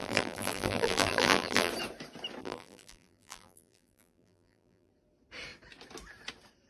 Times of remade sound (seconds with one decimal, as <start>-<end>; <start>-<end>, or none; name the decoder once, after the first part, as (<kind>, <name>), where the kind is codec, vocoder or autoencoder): 0.0-1.7 (vocoder, BigVGAN v2); 2.4-4.9